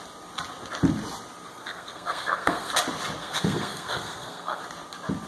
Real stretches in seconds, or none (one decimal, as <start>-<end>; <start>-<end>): 0.0-1.5; 2.7-3.2; 4.6-5.3